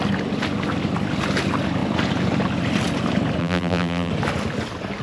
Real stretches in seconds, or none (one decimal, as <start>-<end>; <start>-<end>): 0.0-3.4; 4.1-5.0